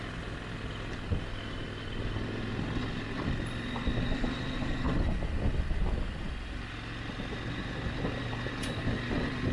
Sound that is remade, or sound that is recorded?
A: recorded